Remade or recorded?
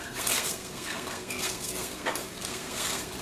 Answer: remade